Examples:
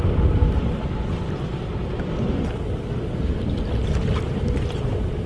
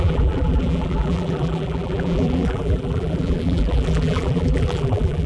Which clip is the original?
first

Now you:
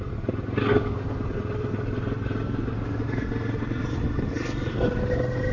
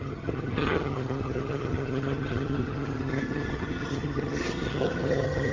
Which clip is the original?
first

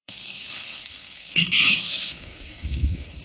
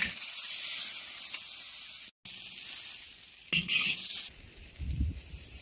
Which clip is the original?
second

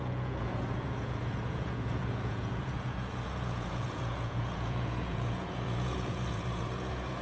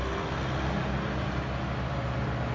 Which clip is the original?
second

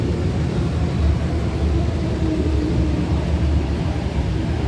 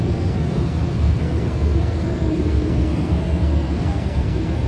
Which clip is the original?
first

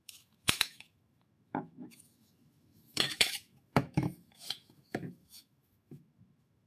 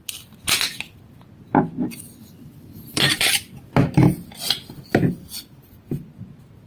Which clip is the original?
second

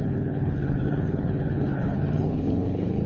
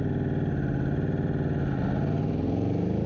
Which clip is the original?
second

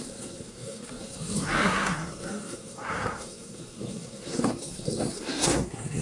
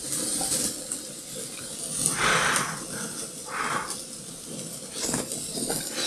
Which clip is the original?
second